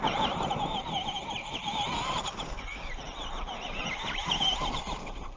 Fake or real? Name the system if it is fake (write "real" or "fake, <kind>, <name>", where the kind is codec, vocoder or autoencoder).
real